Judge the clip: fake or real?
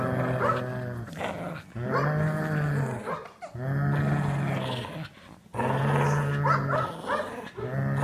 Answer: real